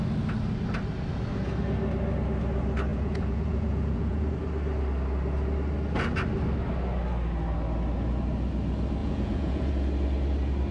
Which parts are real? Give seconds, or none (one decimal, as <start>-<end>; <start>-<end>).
0.0-2.9; 4.3-9.0; 9.7-10.7